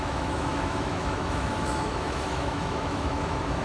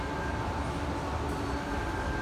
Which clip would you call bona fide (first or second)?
second